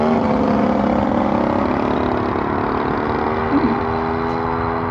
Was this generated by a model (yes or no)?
no